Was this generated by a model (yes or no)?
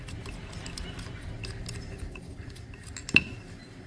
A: no